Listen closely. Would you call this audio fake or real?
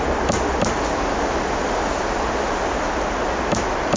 real